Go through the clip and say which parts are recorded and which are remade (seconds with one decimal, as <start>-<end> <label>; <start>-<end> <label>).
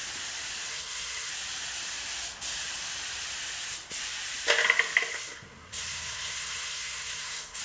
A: 0.0-0.7 recorded; 0.7-1.3 remade; 1.3-5.1 recorded; 5.1-7.6 remade